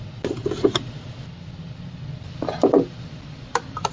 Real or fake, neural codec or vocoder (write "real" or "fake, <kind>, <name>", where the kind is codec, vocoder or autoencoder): real